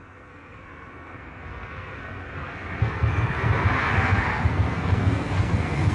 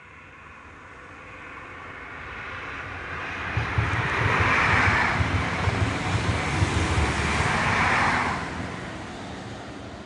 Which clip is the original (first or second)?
second